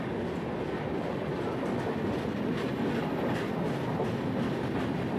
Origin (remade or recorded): recorded